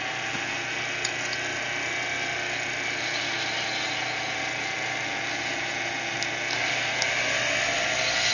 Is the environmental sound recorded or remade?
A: recorded